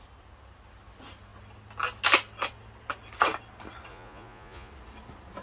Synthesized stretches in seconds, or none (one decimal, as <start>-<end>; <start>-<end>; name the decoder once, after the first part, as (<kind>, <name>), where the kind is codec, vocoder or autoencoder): 3.9-4.7 (vocoder, Vocos)